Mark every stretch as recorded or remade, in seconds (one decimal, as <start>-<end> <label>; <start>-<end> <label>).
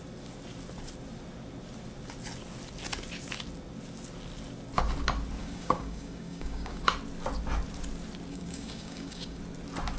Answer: 0.0-5.4 recorded; 5.4-6.8 remade; 6.8-8.3 recorded; 8.3-9.4 remade; 9.4-10.0 recorded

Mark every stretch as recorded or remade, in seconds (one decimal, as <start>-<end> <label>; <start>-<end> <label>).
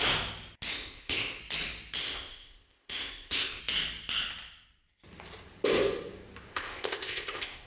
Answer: 0.0-0.7 recorded; 0.7-1.4 remade; 1.4-2.0 recorded; 2.0-3.6 remade; 3.6-6.5 recorded; 6.5-7.7 remade